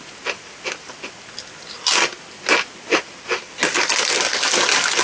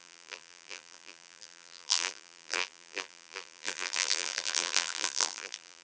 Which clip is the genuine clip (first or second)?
first